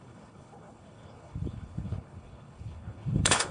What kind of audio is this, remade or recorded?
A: remade